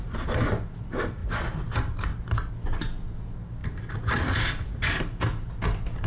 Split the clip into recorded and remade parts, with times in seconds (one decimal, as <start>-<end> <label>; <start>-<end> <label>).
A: 0.0-6.1 recorded